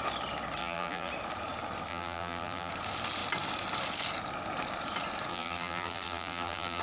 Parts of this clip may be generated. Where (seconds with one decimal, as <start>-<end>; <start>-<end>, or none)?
0.6-1.1; 1.9-2.7; 5.3-6.8